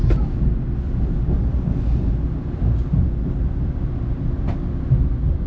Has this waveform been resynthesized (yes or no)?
no